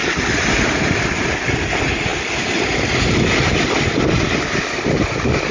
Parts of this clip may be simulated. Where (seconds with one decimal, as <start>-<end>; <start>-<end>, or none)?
2.1-5.5